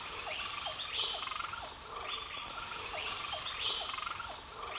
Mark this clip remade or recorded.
recorded